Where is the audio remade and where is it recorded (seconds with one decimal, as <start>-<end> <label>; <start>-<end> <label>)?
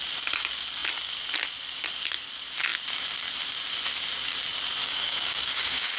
0.0-4.8 recorded; 4.8-6.0 remade